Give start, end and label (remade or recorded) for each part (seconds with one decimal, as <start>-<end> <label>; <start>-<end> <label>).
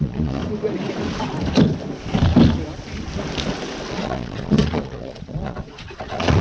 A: 0.0-0.4 remade; 0.4-3.9 recorded; 3.9-6.4 remade